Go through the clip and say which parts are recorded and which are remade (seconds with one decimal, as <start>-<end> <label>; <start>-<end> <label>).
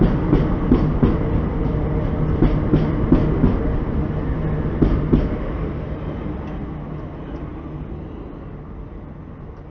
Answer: 0.0-9.7 recorded